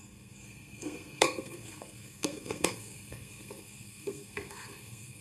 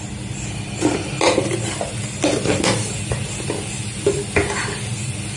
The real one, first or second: second